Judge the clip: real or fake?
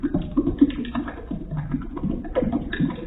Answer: real